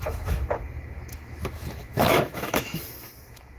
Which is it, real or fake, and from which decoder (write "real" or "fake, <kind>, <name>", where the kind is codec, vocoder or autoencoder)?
fake, autoencoder, DAC-VAE